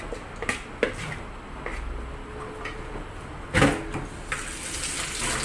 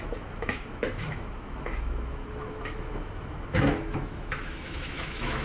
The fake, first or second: second